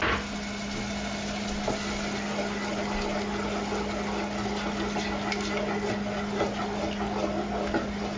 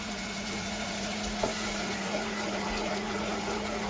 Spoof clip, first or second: second